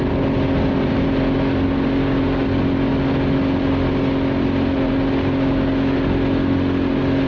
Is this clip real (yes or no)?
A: yes